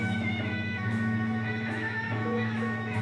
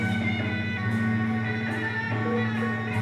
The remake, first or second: first